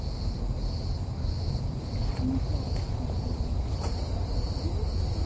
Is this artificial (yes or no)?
no